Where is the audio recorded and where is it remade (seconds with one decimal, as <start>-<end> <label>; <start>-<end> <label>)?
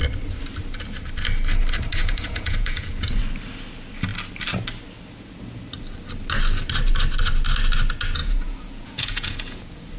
0.0-2.0 recorded; 2.0-3.2 remade; 3.2-8.2 recorded; 8.2-10.0 remade